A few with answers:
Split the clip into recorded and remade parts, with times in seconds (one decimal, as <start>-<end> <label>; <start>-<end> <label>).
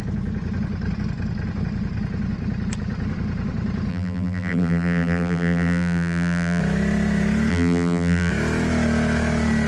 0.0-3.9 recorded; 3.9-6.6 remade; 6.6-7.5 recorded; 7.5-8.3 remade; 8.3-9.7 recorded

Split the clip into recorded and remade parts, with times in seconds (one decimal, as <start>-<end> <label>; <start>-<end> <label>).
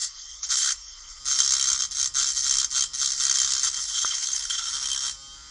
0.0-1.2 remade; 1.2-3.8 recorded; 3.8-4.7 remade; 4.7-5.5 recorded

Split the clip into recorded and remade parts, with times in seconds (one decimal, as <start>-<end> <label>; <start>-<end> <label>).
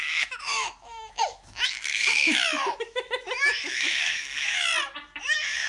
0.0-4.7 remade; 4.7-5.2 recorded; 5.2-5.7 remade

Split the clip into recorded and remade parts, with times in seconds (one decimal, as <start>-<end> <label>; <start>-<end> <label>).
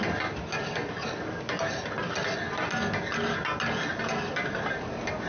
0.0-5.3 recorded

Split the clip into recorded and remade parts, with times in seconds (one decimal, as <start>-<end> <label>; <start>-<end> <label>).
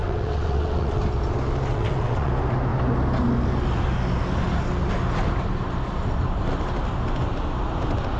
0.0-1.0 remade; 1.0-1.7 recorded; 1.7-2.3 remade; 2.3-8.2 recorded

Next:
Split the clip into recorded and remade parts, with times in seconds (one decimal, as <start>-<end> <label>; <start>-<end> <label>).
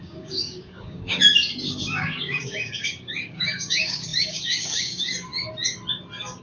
0.0-1.4 remade; 1.4-1.9 recorded; 1.9-5.3 remade; 5.3-6.4 recorded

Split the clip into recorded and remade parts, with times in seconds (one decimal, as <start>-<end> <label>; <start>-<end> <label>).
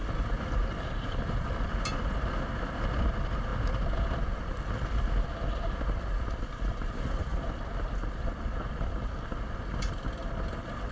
0.0-0.5 recorded; 0.5-3.5 remade; 3.5-6.4 recorded; 6.4-10.9 remade